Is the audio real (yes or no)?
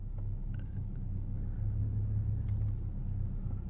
yes